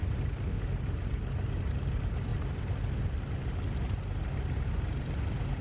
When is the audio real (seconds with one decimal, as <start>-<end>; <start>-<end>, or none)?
0.0-5.6